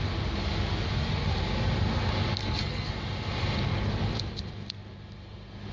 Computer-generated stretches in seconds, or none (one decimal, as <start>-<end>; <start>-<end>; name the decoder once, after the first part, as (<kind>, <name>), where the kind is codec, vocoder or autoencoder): 2.4-2.9 (codec, SNAC)